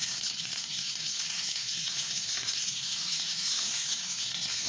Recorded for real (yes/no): no